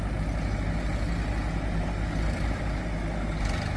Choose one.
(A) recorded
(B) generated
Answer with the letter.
A